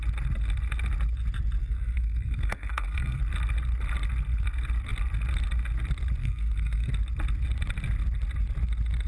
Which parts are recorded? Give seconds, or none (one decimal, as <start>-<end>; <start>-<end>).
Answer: 0.0-1.6; 3.2-6.2; 6.9-9.1